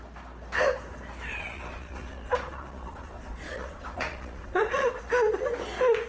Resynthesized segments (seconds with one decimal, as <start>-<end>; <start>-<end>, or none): 1.3-5.0